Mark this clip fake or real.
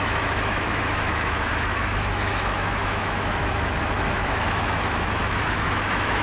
fake